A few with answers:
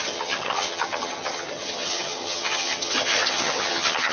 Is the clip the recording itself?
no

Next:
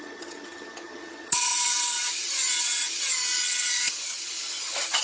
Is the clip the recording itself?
no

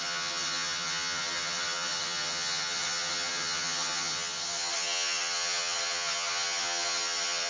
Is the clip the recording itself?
no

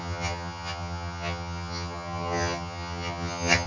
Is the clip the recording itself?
no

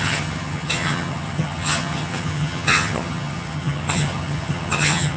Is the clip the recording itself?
no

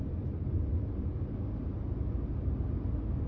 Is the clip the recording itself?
yes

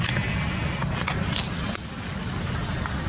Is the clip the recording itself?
yes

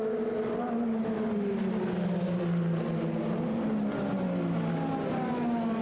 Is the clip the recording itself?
yes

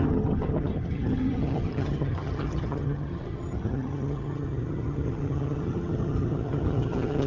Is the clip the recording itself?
no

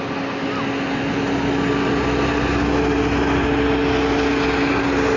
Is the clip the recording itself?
yes